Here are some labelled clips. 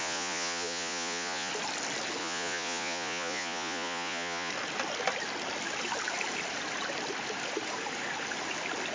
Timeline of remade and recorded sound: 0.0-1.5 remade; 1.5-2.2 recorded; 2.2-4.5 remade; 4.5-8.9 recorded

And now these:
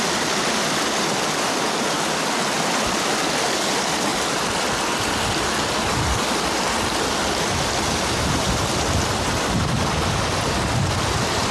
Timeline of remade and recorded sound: 0.0-11.5 recorded

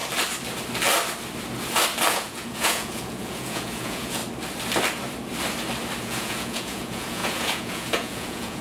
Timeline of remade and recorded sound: 0.0-2.1 recorded; 2.1-4.2 remade; 4.2-6.0 recorded; 6.0-8.6 remade

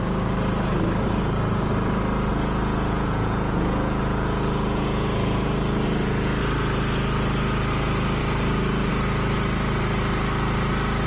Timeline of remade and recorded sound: 0.0-2.3 recorded; 2.3-6.4 remade; 6.4-11.1 recorded

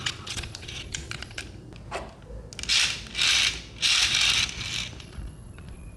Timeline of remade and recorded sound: 0.0-1.4 remade; 1.4-5.0 recorded; 5.0-6.0 remade

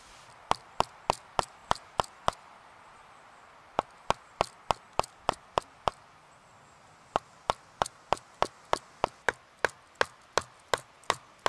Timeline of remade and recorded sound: 0.0-11.5 recorded